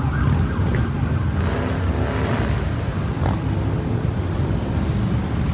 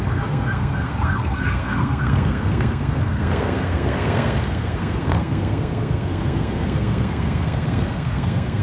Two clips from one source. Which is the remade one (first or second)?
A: second